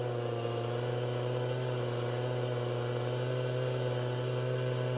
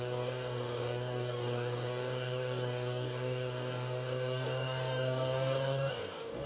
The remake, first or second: second